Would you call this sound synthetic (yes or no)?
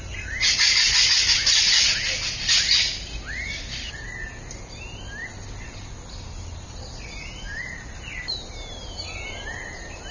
no